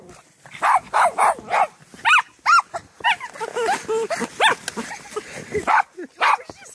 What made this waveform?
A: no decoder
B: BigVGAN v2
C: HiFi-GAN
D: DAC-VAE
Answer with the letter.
A